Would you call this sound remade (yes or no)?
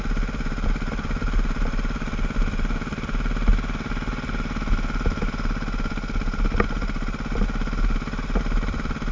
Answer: no